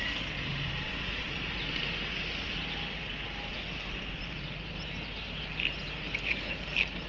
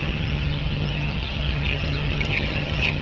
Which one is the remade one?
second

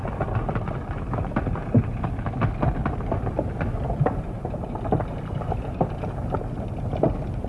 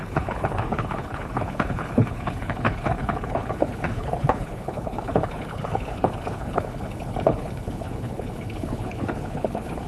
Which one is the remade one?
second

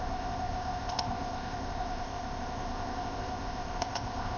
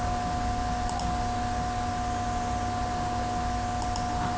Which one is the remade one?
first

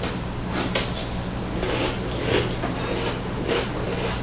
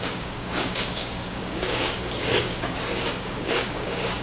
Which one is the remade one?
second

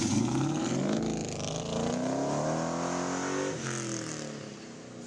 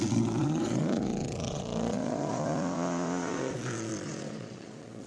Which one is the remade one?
second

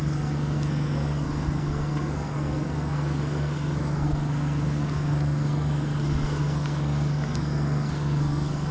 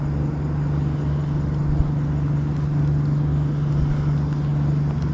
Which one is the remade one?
first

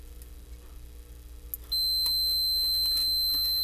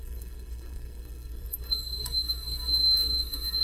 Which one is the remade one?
second